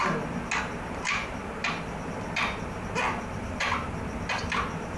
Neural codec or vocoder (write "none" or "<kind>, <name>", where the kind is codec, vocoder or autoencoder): none